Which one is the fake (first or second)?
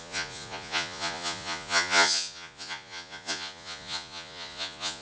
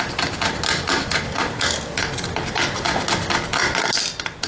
first